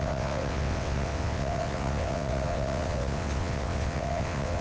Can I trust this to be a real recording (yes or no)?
no